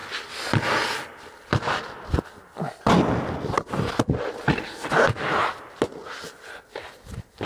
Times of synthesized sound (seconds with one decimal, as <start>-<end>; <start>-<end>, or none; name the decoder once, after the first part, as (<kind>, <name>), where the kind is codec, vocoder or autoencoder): none